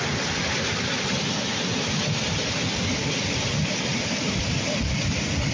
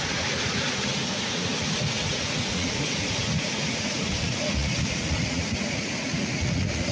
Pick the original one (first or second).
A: first